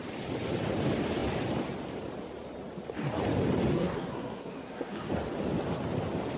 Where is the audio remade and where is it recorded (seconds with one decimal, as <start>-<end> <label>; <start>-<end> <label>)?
0.0-3.7 recorded; 3.7-5.1 remade; 5.1-6.4 recorded